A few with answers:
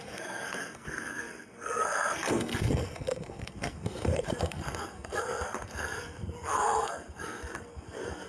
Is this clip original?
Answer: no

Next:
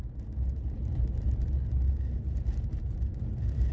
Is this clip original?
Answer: yes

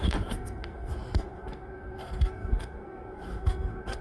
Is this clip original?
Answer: no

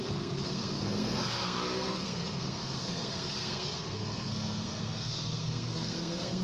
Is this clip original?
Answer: no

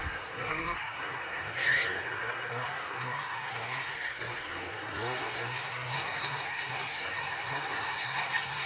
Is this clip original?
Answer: no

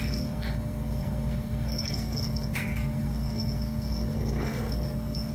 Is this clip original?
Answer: no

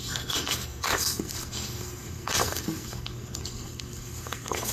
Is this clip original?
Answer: no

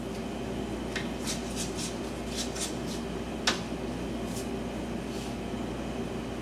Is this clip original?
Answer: yes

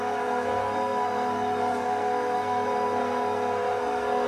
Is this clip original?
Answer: no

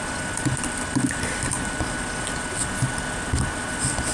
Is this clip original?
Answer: yes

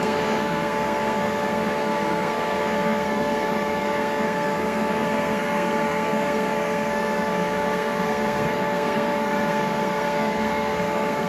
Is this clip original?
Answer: no